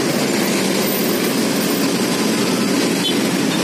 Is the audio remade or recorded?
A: recorded